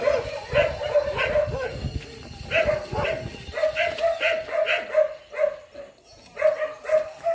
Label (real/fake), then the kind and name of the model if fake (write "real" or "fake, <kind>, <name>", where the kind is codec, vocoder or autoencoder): real